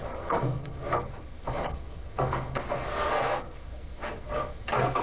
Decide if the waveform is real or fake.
fake